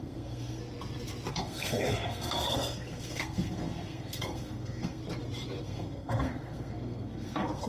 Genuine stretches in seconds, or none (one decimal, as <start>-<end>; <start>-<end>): 0.6-1.3; 5.0-5.6